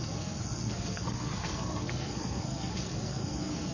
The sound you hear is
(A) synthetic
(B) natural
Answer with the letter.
A